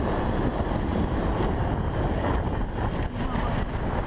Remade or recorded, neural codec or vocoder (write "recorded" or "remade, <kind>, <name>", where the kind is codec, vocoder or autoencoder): recorded